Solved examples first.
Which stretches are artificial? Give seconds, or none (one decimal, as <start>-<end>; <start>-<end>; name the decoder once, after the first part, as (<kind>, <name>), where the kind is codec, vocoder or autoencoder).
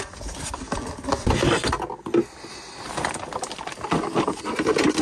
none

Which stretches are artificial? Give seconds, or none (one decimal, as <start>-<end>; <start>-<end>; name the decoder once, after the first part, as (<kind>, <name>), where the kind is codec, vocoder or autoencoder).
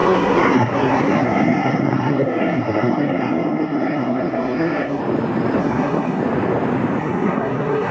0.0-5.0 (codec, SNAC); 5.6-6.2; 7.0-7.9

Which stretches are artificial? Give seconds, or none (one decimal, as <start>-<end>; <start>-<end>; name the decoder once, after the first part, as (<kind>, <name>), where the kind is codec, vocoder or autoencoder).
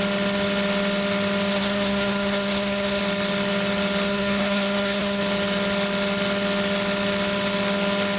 1.5-3.0 (codec, SNAC); 4.1-5.2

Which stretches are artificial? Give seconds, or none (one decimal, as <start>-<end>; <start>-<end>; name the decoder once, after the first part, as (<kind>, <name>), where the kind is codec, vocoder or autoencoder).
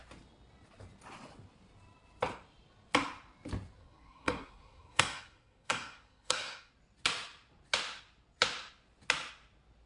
3.8-6.7 (codec, SNAC)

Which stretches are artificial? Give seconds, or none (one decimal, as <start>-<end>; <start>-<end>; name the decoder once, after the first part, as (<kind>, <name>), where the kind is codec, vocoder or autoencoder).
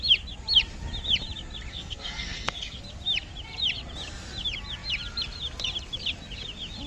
1.7-2.8 (codec, SNAC)